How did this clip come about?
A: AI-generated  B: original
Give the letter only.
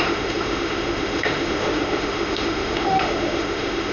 A